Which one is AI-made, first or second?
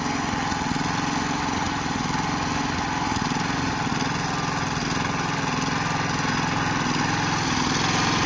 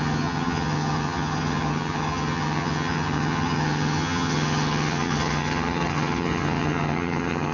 second